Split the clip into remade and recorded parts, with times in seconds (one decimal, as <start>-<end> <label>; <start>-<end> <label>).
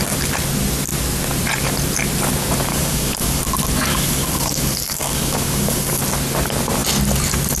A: 0.0-2.7 recorded; 2.7-3.4 remade; 3.4-3.9 recorded; 3.9-6.0 remade; 6.0-7.6 recorded